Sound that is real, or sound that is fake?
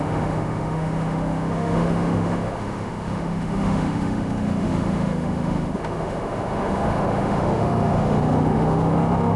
fake